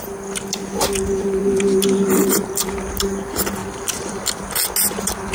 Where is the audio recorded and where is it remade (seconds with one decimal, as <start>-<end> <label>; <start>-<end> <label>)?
0.0-3.6 recorded; 3.6-4.2 remade; 4.2-5.3 recorded